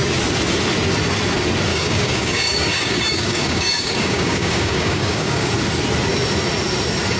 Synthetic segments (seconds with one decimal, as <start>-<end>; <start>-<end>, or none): 1.7-5.5